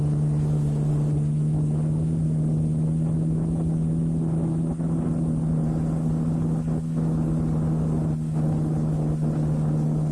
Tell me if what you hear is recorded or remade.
recorded